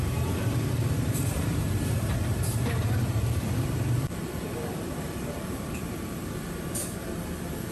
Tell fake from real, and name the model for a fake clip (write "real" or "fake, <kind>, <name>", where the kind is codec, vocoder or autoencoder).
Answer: fake, vocoder, BigVGAN v2